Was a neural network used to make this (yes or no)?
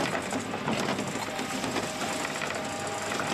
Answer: no